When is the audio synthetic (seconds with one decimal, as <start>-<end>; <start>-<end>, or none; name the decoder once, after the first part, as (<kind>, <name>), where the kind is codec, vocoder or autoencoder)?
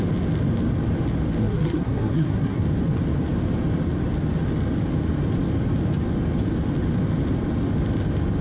1.4-2.6 (codec, SNAC)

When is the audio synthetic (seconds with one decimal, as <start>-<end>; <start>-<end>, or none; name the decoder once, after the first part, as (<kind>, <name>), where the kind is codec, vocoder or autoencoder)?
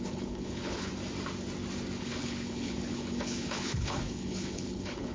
0.0-0.9 (codec, HILCodec); 2.0-5.1